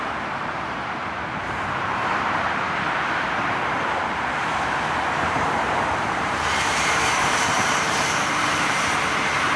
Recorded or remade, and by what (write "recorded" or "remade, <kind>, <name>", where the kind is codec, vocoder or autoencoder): remade, vocoder, BigVGAN v2